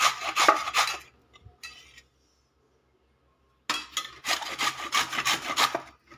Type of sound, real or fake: real